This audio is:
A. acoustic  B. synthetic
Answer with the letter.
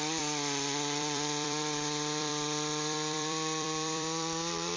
B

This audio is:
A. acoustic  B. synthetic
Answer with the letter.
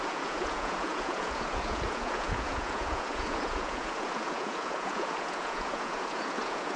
B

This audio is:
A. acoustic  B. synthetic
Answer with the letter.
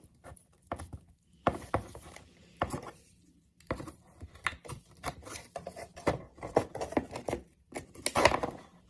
B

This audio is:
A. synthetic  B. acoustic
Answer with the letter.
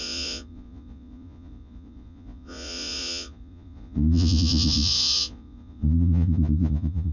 A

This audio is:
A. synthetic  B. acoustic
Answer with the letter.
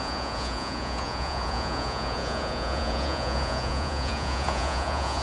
A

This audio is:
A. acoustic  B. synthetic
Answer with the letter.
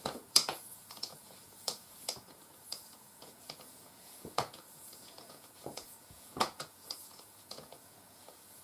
B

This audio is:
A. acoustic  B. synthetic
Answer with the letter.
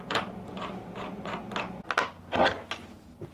A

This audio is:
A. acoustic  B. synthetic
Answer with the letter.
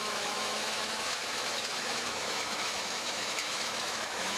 B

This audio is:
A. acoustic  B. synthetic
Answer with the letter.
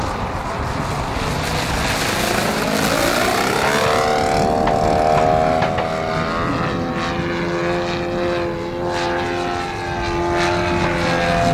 A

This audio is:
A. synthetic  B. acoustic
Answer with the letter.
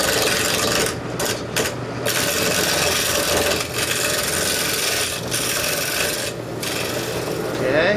B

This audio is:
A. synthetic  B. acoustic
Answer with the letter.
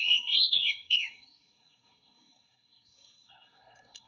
A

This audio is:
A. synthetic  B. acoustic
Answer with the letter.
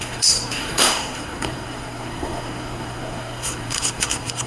A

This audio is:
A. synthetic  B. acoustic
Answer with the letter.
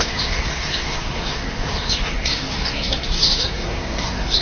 A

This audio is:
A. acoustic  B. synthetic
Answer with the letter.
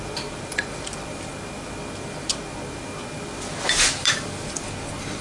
A